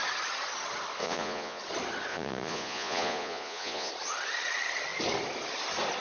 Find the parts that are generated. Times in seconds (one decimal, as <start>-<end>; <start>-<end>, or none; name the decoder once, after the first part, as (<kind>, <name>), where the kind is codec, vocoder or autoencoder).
1.0-1.6 (vocoder, Vocos); 2.1-3.9